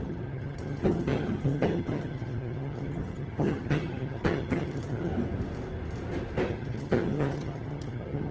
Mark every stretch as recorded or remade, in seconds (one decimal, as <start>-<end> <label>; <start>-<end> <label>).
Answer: 0.0-5.1 remade; 5.1-6.5 recorded; 6.5-8.3 remade